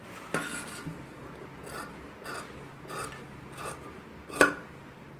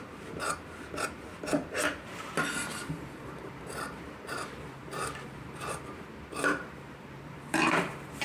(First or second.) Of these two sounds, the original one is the first